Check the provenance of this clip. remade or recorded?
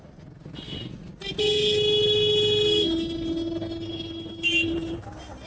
recorded